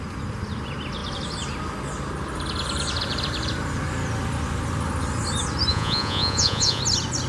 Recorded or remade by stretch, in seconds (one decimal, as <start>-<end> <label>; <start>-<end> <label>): 0.0-5.7 recorded; 5.7-6.8 remade; 6.8-7.3 recorded